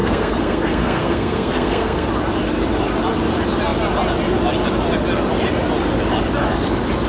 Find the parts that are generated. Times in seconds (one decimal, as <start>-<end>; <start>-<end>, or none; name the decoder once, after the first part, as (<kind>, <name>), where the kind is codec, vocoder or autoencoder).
0.0-2.1 (codec, SNAC)